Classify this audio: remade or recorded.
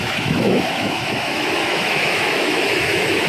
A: remade